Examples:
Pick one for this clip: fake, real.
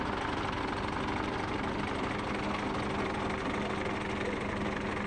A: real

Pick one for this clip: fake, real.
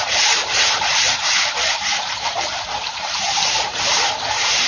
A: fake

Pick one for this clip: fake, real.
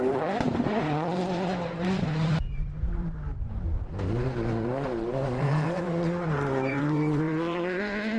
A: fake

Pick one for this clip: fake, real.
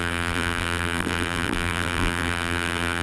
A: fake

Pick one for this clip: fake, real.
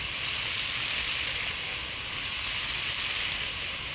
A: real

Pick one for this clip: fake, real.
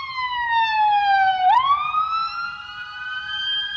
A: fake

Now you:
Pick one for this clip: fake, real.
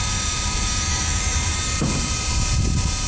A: fake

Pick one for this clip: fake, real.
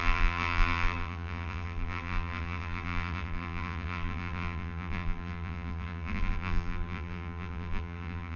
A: fake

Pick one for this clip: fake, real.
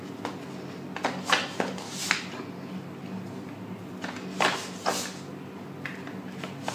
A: real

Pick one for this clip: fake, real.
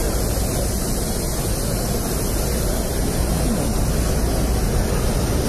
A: real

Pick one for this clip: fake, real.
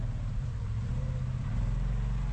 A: fake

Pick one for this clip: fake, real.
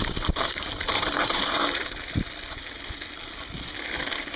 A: real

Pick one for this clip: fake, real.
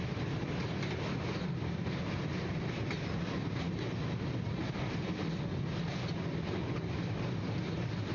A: real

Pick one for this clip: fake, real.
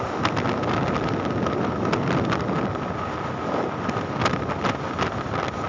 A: real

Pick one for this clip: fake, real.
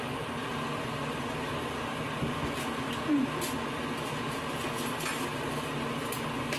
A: real